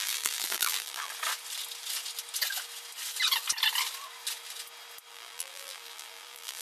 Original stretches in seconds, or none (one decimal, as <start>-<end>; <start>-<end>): 1.1-5.1